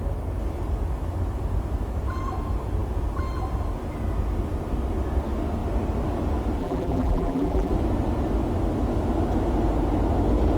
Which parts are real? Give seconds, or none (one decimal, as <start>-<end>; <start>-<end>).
0.0-6.6; 7.7-10.6